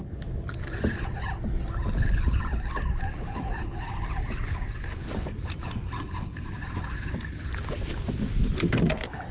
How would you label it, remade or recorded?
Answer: recorded